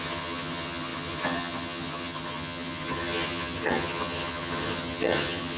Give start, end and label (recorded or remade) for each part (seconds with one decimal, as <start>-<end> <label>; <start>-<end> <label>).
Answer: 0.0-5.6 remade